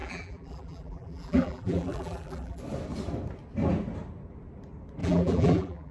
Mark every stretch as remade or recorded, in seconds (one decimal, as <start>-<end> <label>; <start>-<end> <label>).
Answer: 0.0-2.6 remade; 2.6-5.0 recorded; 5.0-5.9 remade